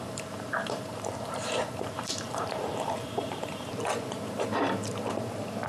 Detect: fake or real fake